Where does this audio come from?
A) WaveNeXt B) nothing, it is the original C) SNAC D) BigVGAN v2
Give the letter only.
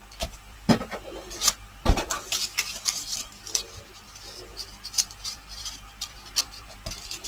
D